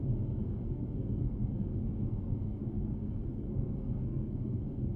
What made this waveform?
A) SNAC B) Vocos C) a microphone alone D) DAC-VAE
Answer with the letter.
A